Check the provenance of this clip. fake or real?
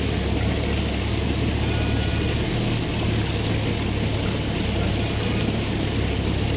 real